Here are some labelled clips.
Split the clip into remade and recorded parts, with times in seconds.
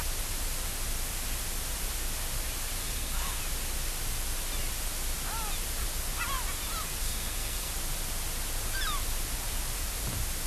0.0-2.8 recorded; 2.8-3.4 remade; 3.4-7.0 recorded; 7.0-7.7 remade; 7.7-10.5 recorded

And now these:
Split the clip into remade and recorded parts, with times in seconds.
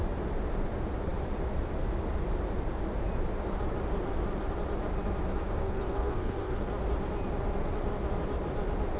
0.0-5.6 recorded; 5.6-6.7 remade; 6.7-9.0 recorded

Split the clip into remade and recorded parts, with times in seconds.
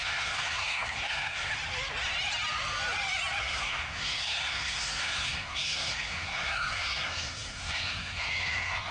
0.0-1.5 remade; 1.5-3.4 recorded; 3.4-8.9 remade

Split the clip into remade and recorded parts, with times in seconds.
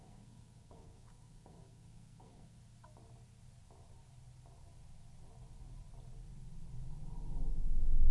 0.0-2.6 remade; 2.6-7.5 recorded; 7.5-8.1 remade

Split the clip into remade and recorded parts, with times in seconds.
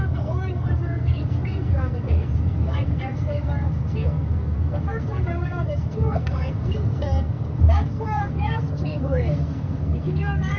0.0-10.6 remade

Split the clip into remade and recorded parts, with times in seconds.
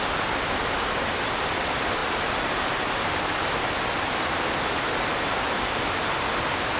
0.0-6.8 recorded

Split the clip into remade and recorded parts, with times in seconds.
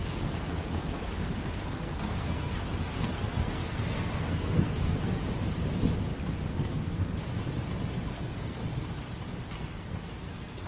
0.0-5.2 remade; 5.2-6.5 recorded; 6.5-7.2 remade; 7.2-8.1 recorded; 8.1-8.6 remade; 8.6-9.5 recorded; 9.5-10.7 remade